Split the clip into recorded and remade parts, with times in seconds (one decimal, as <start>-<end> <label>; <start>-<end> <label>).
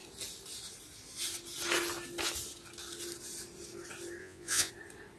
0.0-4.2 recorded; 4.2-4.7 remade; 4.7-5.2 recorded